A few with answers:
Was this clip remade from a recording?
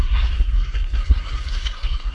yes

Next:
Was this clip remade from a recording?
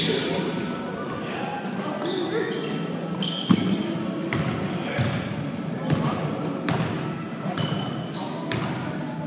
no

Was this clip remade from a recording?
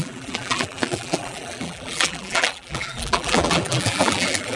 yes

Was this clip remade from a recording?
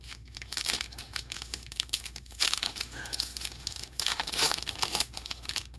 yes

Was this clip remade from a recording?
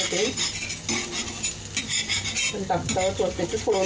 no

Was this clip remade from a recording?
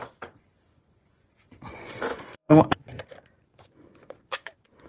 yes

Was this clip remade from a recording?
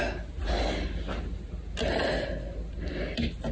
no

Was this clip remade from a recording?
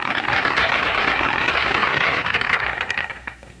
yes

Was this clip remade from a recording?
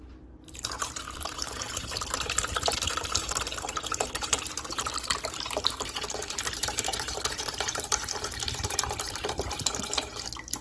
yes